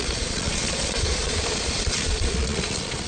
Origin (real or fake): fake